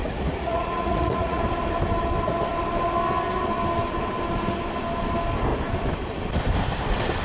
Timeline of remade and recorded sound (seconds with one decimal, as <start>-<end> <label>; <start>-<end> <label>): 0.0-1.4 remade; 1.4-7.2 recorded